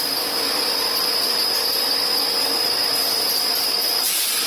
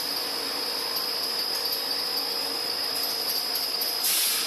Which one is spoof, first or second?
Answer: first